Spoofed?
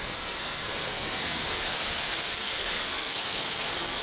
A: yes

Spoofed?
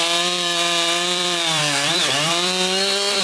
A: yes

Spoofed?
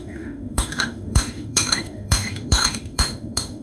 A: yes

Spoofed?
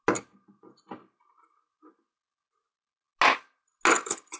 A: no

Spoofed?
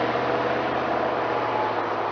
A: no